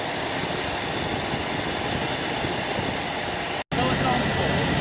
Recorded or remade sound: recorded